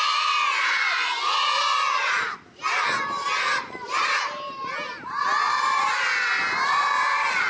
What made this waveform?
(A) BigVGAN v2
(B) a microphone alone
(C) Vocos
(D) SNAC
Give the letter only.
B